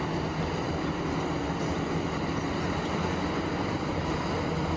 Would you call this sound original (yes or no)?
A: yes